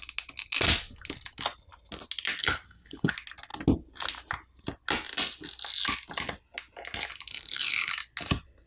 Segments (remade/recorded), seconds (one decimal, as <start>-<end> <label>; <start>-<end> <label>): 0.0-2.4 recorded; 2.4-3.1 remade; 3.1-7.3 recorded; 7.3-7.9 remade; 7.9-8.7 recorded